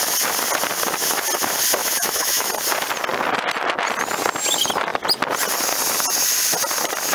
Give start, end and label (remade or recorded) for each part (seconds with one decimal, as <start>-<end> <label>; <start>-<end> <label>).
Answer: 0.0-1.8 recorded; 1.8-2.5 remade; 2.5-7.1 recorded